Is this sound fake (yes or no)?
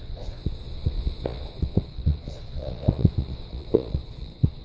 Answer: yes